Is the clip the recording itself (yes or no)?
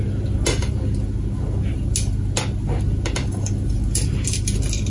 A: yes